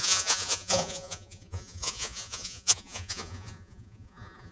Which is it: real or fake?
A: fake